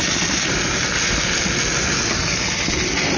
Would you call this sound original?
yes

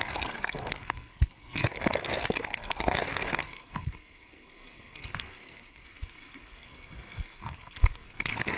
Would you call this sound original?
no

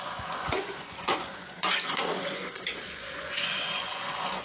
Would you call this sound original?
no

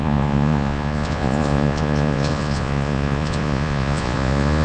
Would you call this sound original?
no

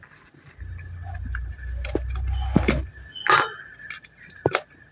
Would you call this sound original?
yes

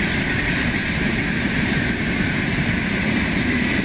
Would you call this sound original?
yes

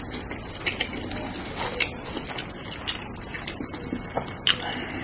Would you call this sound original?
yes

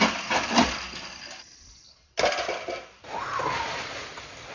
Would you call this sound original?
yes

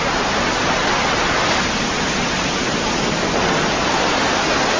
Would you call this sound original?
yes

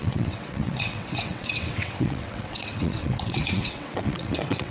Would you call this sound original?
no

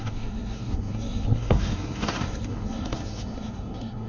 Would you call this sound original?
no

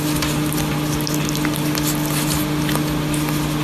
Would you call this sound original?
yes